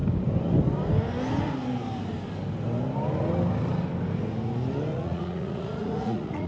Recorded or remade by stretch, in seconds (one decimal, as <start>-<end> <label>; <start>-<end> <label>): 0.0-4.9 recorded; 4.9-6.5 remade